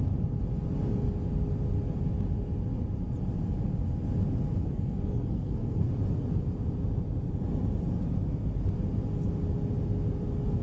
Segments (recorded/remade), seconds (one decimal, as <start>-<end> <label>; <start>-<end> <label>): 0.0-4.6 recorded; 4.6-5.9 remade; 5.9-10.6 recorded